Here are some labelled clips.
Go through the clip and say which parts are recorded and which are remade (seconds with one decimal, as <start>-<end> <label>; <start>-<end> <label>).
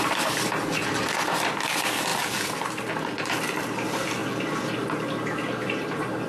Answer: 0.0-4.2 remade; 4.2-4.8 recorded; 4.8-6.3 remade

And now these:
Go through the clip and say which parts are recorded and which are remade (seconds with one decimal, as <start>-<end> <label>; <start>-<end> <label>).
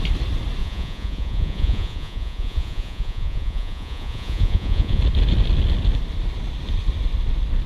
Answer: 0.0-0.6 recorded; 0.6-5.0 remade; 5.0-7.7 recorded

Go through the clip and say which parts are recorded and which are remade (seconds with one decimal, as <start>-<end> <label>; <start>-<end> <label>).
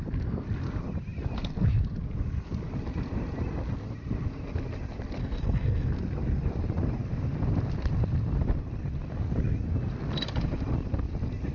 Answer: 0.0-5.2 recorded; 5.2-5.9 remade; 5.9-11.5 recorded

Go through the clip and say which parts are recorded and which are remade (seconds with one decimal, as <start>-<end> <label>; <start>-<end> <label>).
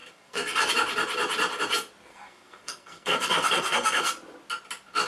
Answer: 0.0-0.7 remade; 0.7-2.1 recorded; 2.1-4.1 remade; 4.1-5.1 recorded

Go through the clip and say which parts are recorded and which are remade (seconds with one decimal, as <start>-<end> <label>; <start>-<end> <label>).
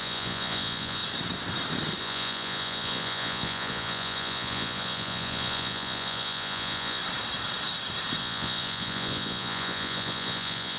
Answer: 0.0-1.0 remade; 1.0-2.0 recorded; 2.0-7.0 remade; 7.0-8.2 recorded; 8.2-10.8 remade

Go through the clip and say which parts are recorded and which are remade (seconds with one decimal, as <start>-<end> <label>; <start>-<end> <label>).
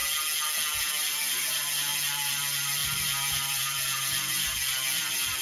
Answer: 0.0-0.8 recorded; 0.8-5.4 remade